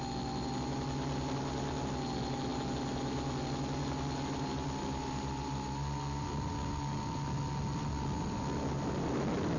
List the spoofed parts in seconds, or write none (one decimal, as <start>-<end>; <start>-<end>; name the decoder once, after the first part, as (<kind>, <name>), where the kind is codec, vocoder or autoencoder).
none

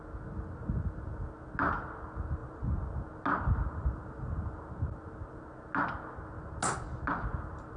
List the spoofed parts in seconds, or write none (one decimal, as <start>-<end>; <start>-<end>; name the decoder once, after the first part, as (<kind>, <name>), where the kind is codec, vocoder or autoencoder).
none